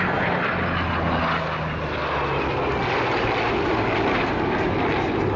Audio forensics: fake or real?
real